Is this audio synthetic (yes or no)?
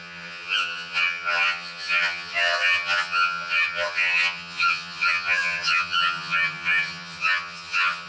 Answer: yes